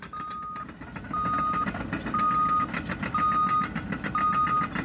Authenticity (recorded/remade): recorded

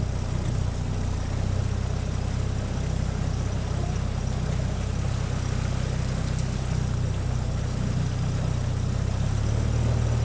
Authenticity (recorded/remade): recorded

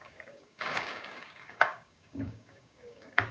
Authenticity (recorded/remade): remade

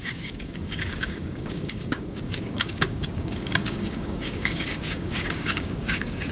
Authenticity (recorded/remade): remade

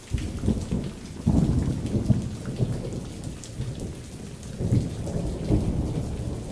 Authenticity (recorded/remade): recorded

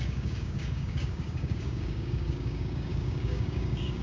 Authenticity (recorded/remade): remade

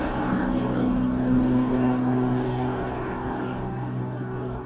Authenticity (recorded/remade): remade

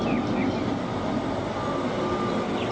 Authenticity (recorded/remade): recorded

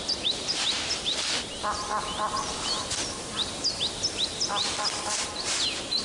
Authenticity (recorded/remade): recorded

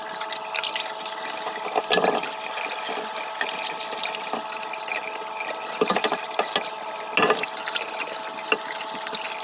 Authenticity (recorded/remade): recorded